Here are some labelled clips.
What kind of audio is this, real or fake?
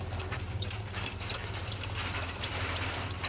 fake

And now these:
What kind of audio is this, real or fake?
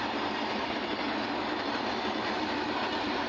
real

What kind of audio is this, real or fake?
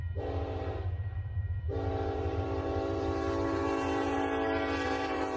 fake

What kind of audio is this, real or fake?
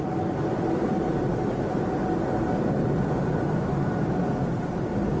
real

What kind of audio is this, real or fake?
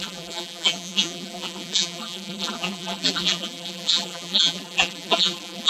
fake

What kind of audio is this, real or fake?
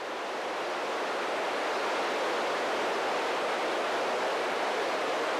real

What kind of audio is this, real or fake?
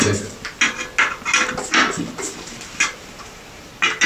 real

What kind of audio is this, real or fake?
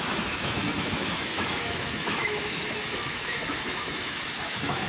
fake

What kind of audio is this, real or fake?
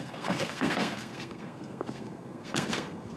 fake